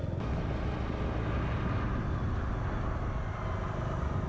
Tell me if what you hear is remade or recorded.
recorded